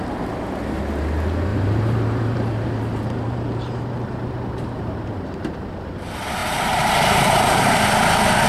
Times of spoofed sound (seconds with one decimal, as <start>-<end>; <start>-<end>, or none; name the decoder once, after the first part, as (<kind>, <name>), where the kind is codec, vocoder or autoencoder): 1.5-5.7 (vocoder, BigVGAN v2); 6.4-7.9

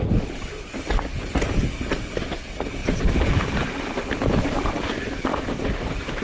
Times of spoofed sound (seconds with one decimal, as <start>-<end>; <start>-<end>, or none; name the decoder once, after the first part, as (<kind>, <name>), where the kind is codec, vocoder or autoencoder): 0.0-6.2 (vocoder, BigVGAN v2)